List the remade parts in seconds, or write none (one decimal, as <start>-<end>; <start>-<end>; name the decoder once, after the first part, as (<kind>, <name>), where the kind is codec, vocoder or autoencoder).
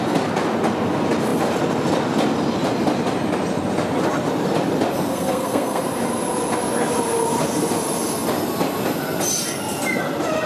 5.1-5.8 (codec, SNAC)